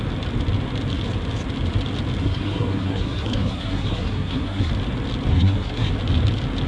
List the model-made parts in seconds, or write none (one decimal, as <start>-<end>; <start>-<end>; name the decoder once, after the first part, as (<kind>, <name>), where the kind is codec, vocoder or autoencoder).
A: 2.2-4.7 (codec, SNAC); 5.3-5.9